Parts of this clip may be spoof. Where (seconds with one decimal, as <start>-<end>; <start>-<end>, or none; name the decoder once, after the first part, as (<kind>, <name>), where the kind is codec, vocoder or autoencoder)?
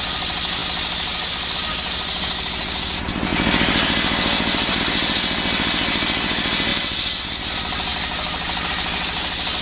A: 6.7-7.2 (vocoder, BigVGAN v2)